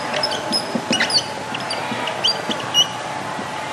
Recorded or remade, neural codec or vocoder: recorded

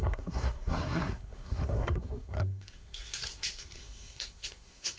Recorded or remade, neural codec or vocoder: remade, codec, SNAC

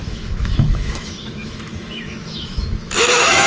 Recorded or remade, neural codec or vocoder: remade, autoencoder, DAC-VAE